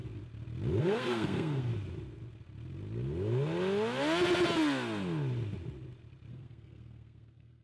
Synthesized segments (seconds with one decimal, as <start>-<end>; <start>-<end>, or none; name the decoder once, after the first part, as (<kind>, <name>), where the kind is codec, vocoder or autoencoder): 0.8-1.7 (codec, SNAC); 6.3-7.6